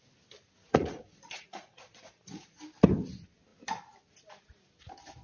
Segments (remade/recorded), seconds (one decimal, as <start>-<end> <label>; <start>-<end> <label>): 0.0-0.6 recorded; 0.6-2.6 remade; 2.6-5.2 recorded